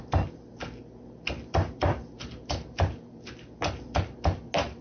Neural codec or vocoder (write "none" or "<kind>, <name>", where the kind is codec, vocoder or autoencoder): none